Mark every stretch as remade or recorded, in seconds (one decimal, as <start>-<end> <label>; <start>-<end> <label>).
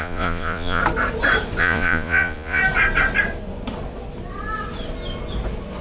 0.0-0.8 remade; 0.8-1.6 recorded; 1.6-2.6 remade; 2.6-5.8 recorded